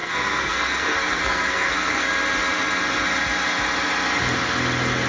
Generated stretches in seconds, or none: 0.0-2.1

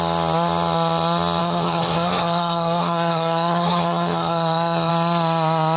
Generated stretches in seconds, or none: 1.4-4.9

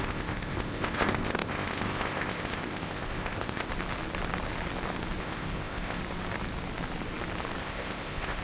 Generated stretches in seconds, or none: 0.0-3.7; 5.2-6.0; 7.6-8.4

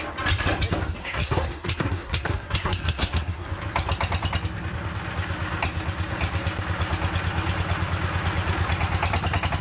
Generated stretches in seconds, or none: 1.0-3.5

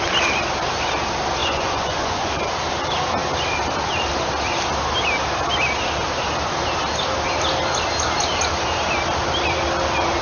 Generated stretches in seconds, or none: 1.4-2.3